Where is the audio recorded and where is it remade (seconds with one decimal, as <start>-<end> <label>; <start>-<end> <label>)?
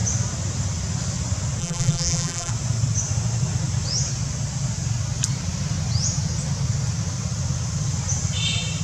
0.0-1.6 recorded; 1.6-2.5 remade; 2.5-8.8 recorded